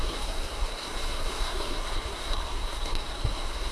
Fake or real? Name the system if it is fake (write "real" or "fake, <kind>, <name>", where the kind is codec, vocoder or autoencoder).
fake, codec, SNAC